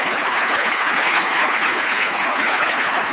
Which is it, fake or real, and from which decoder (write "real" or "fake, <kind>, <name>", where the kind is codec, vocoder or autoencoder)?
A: fake, codec, HILCodec